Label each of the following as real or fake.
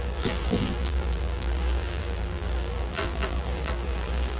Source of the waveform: fake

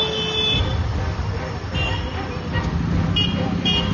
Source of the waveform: real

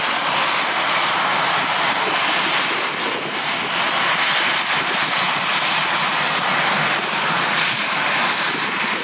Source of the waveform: real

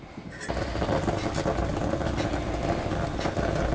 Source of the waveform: real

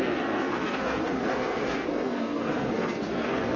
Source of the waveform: fake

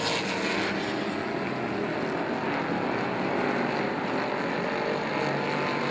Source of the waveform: real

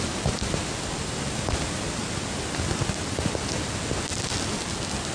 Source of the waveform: real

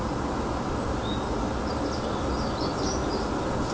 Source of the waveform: real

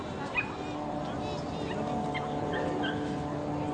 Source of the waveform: real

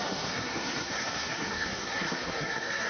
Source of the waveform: fake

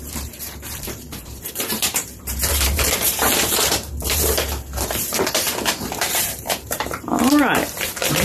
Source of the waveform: fake